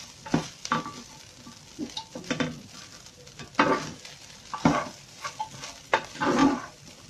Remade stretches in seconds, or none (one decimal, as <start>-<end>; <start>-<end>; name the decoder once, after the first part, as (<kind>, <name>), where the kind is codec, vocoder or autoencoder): 6.4-7.1 (vocoder, BigVGAN v2)